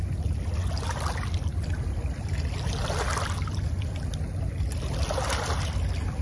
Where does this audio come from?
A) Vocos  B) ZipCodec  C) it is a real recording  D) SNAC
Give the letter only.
C